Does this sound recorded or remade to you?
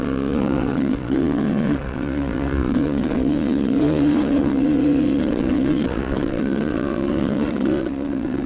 remade